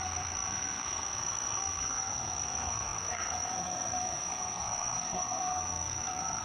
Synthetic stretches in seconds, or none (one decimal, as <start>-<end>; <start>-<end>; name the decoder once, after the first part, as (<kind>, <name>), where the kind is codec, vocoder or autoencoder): 0.0-6.4 (codec, SNAC)